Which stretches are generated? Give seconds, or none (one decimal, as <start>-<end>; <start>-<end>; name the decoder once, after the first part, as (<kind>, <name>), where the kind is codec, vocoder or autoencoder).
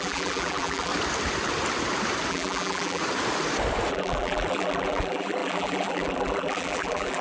0.0-0.9 (vocoder, BigVGAN v2); 2.3-3.0; 3.9-7.2